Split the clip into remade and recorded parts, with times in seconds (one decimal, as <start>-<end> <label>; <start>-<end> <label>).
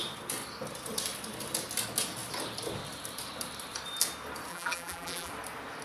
0.0-4.5 recorded; 4.5-5.3 remade; 5.3-5.8 recorded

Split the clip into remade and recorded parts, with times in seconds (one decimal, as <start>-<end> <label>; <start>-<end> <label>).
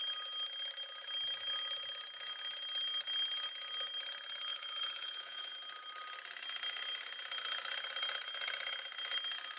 0.0-4.5 recorded; 4.5-5.5 remade; 5.5-9.6 recorded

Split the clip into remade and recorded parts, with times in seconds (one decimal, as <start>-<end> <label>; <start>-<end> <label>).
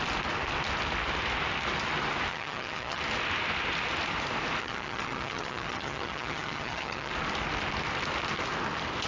0.0-2.3 recorded; 2.3-3.0 remade; 3.0-4.6 recorded; 4.6-7.1 remade; 7.1-9.1 recorded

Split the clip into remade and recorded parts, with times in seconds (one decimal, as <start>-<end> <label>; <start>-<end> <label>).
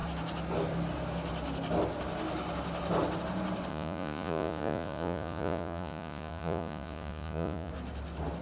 0.0-3.7 recorded; 3.7-7.7 remade; 7.7-8.4 recorded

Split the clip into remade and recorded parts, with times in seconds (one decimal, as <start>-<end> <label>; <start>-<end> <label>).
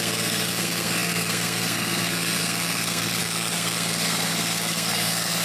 0.0-5.4 remade